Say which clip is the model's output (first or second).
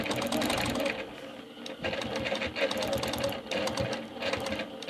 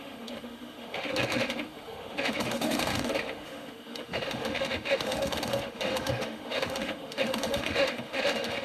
second